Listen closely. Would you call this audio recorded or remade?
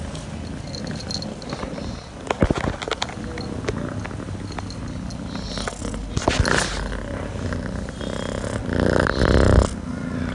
recorded